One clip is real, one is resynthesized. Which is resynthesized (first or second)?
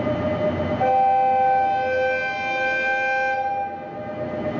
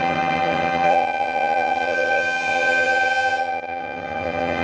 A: second